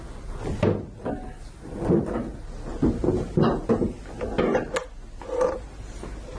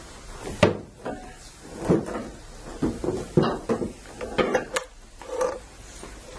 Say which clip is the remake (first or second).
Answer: second